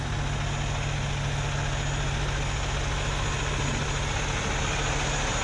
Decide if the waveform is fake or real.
real